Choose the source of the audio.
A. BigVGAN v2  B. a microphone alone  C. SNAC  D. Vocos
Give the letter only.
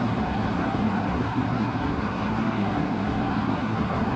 C